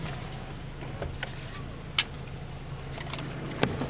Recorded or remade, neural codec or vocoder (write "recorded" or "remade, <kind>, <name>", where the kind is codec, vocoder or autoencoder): recorded